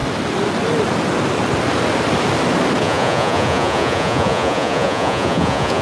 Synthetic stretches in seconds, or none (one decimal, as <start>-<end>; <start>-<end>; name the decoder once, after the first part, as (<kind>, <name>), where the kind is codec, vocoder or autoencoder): 2.8-5.8 (vocoder, Vocos)